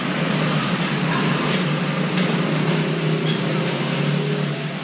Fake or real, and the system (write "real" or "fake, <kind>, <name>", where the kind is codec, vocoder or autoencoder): real